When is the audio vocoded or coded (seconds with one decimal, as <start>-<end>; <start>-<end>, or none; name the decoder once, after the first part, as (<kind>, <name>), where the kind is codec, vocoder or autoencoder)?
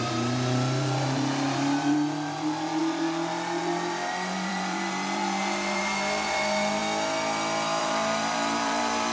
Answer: 0.0-6.8 (vocoder, BigVGAN v2); 7.8-9.1